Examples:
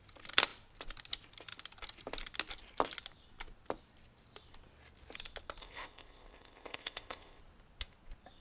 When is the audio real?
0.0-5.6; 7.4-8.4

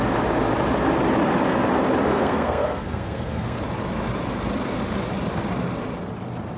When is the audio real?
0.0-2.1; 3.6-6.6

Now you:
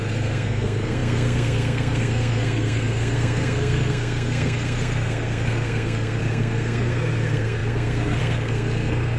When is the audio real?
none

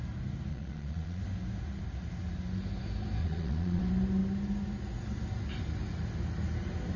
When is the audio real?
0.0-0.5; 1.2-3.2; 3.8-7.0